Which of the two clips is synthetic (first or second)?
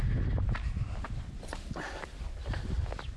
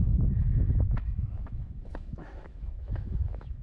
second